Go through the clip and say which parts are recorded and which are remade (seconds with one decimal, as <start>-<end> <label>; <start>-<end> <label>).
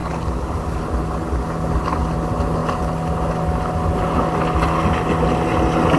0.0-6.0 recorded